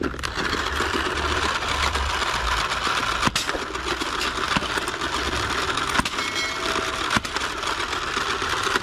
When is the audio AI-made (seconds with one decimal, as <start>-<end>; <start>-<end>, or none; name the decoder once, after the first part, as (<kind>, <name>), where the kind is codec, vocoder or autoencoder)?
0.0-3.0 (vocoder, BigVGAN v2); 6.6-8.8